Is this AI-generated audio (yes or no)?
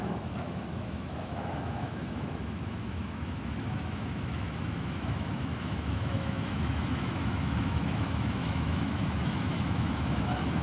yes